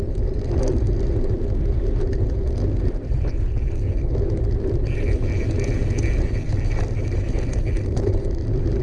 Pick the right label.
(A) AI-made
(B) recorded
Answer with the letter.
B